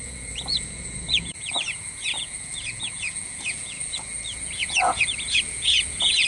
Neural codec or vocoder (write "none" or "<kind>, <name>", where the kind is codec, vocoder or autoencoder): vocoder, Vocos